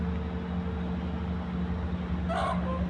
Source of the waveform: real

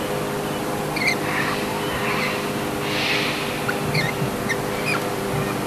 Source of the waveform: real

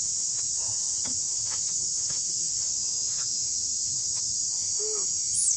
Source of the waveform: fake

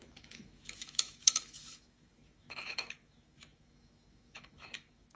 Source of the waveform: fake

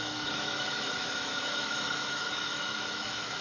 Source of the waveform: fake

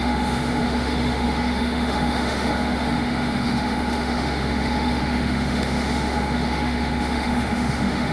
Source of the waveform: fake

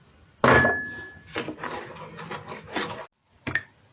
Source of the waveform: real